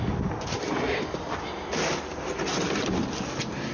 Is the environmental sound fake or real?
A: real